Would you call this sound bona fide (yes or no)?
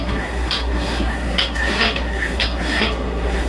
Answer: no